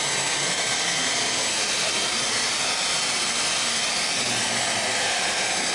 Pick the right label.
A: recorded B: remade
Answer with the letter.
A